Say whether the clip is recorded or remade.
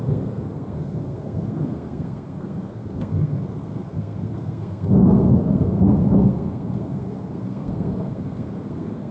remade